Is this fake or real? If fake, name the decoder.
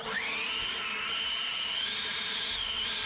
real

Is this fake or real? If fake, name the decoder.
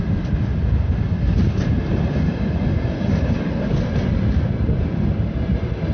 real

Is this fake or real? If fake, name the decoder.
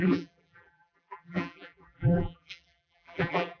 fake, vocoder, BigVGAN v2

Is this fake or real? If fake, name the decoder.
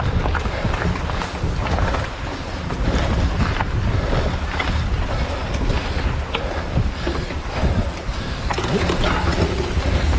real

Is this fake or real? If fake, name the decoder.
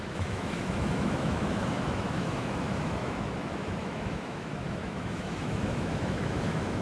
fake, autoencoder, DAC-VAE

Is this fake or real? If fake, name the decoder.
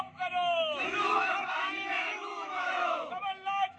fake, autoencoder, DAC-VAE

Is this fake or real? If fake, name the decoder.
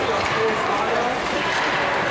real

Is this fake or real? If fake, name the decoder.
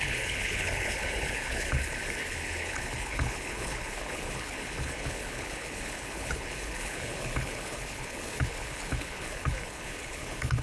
fake, codec, HILCodec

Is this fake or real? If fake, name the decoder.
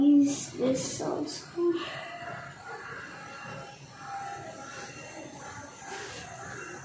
real